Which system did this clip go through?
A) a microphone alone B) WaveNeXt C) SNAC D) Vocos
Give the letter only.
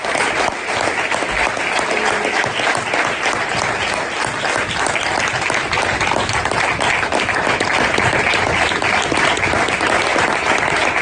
A